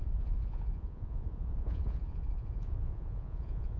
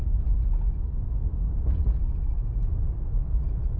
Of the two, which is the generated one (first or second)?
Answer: first